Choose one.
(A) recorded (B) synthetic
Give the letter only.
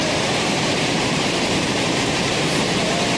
B